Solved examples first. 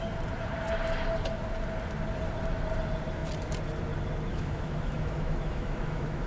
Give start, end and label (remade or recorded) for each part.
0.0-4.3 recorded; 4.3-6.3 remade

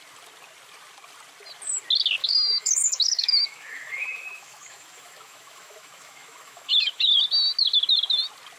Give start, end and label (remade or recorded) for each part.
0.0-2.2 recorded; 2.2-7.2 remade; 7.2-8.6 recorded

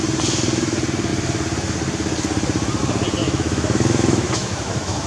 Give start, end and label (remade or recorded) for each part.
0.0-3.2 recorded; 3.2-5.1 remade

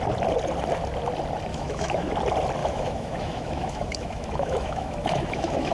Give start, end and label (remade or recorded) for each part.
0.0-1.5 recorded; 1.5-2.1 remade; 2.1-2.6 recorded; 2.6-5.7 remade

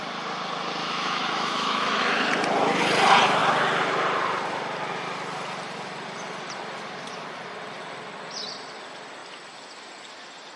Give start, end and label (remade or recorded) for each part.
0.0-0.8 recorded; 0.8-2.2 remade; 2.2-10.6 recorded

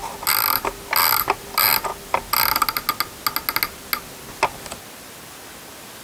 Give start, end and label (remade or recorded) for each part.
0.0-6.0 recorded